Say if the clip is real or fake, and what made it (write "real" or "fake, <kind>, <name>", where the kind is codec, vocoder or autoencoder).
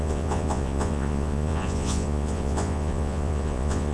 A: fake, vocoder, Vocos